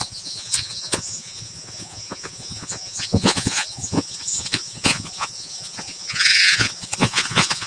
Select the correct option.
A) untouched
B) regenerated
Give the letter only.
B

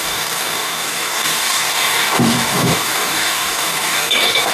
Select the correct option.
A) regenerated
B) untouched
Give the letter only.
A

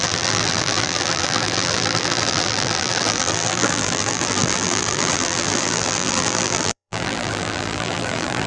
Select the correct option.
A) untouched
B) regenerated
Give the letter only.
B